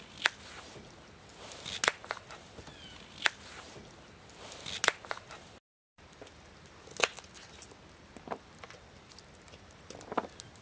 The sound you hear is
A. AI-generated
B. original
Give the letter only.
B